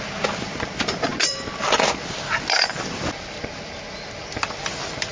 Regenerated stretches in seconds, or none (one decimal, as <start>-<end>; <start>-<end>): none